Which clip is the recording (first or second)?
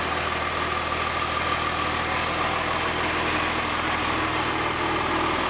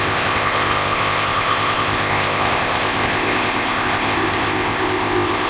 first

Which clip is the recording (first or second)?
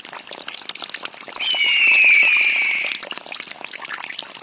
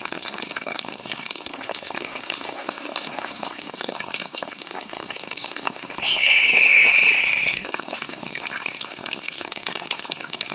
first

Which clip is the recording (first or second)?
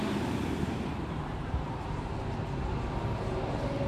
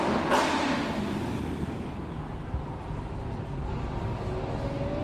second